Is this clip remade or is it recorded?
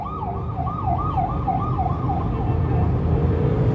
recorded